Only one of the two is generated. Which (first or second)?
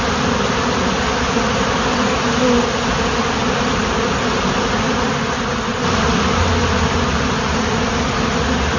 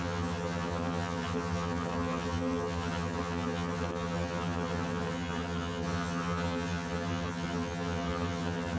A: second